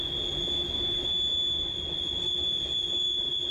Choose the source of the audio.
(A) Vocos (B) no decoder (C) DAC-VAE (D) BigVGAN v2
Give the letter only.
B